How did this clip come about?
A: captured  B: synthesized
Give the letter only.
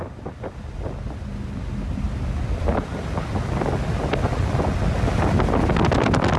A